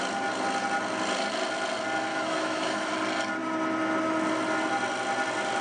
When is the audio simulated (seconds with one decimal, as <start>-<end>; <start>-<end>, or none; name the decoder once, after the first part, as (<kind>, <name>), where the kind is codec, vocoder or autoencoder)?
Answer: 2.1-2.9 (autoencoder, DAC-VAE)